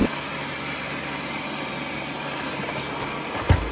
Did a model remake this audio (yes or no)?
no